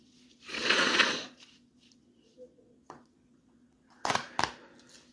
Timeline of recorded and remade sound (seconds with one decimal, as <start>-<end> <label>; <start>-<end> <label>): 0.0-4.2 remade; 4.2-5.1 recorded